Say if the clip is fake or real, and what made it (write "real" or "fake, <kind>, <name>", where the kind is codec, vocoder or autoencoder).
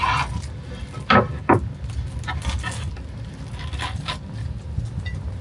real